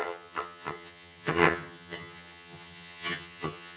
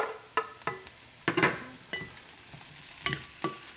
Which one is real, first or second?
second